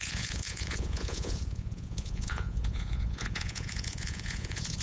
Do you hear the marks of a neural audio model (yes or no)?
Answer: yes